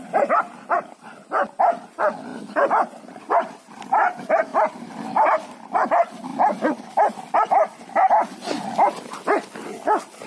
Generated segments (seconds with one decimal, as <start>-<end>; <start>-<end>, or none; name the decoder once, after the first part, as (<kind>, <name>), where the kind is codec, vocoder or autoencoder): none

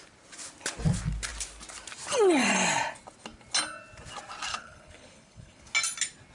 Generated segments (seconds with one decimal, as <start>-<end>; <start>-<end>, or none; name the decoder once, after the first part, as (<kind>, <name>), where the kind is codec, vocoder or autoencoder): 4.5-5.6 (codec, HILCodec)